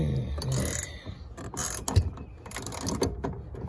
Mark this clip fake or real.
real